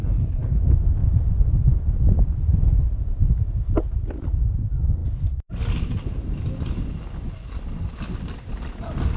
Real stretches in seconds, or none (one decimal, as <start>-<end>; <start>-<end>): 0.6-9.2